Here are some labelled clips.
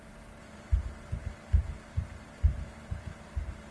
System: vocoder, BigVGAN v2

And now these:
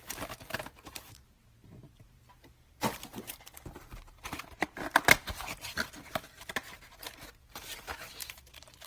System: vocoder, BigVGAN v2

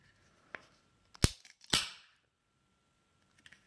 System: none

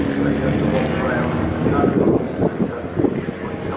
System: none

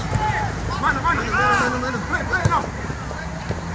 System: none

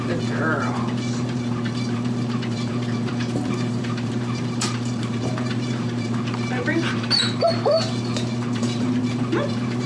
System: vocoder, BigVGAN v2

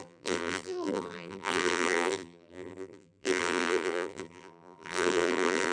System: vocoder, BigVGAN v2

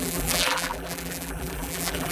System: vocoder, BigVGAN v2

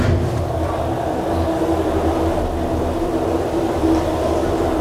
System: vocoder, BigVGAN v2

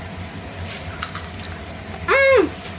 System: none